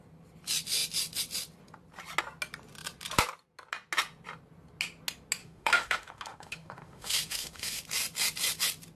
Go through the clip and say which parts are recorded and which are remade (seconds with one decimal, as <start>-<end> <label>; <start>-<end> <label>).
0.0-5.4 recorded; 5.4-7.8 remade; 7.8-9.0 recorded